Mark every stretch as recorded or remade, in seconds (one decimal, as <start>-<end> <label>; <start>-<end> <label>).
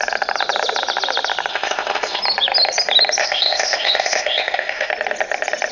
0.0-1.5 recorded; 1.5-2.2 remade; 2.2-3.2 recorded; 3.2-4.9 remade; 4.9-5.7 recorded